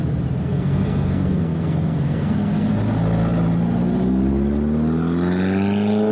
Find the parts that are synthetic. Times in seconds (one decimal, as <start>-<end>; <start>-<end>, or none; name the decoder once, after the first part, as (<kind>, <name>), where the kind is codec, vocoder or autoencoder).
0.4-2.7 (codec, SNAC)